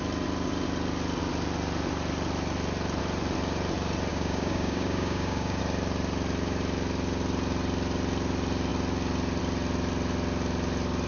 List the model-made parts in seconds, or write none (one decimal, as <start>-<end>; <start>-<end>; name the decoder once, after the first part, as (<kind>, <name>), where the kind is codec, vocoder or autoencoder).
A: 4.1-5.6 (codec, DAC)